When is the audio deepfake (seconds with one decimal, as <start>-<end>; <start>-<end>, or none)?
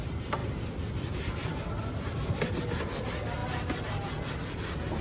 0.4-2.5